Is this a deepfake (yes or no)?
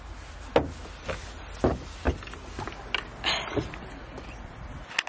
no